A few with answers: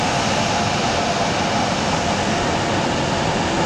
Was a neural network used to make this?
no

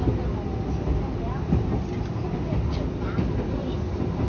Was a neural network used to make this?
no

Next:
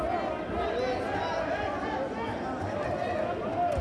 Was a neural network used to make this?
no